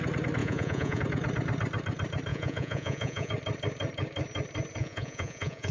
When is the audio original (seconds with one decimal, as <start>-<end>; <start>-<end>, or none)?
0.0-0.4; 1.0-2.3; 3.3-4.8